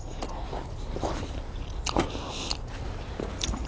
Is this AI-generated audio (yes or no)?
no